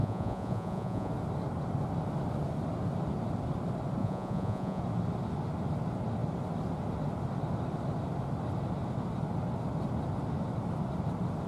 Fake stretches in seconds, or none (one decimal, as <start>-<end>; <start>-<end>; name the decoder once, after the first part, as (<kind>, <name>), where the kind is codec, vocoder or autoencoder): 0.0-1.1 (vocoder, Vocos); 4.0-4.8